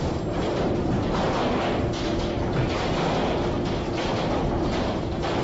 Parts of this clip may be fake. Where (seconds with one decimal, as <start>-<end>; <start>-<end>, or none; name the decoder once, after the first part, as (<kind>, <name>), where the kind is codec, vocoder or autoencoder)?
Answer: none